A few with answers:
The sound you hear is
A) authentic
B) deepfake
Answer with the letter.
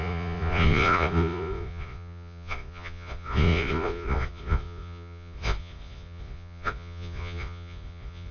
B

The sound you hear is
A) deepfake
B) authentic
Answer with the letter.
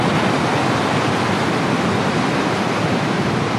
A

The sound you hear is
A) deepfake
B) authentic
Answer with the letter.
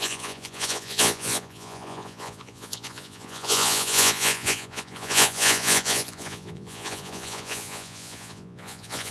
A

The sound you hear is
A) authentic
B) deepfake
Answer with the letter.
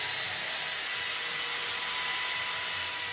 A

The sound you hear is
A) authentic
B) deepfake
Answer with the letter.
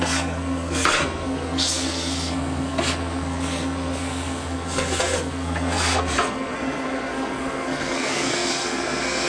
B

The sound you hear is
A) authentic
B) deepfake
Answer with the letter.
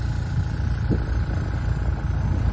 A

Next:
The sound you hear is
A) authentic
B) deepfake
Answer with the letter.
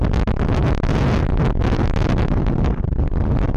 A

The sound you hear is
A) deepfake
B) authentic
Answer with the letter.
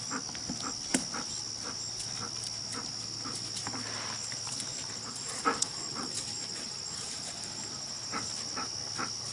B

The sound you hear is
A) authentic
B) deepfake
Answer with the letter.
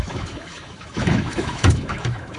B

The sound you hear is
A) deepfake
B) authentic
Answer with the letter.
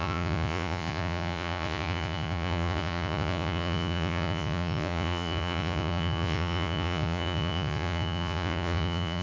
A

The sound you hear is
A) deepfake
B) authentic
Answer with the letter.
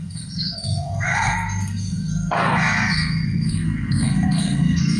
A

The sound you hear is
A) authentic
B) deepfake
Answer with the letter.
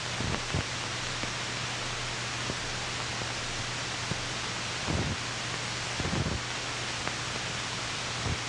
A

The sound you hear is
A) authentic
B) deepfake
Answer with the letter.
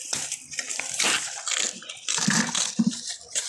B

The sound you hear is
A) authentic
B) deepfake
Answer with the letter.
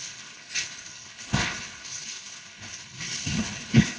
B